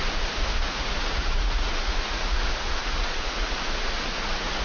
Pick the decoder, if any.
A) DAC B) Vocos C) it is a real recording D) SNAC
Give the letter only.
B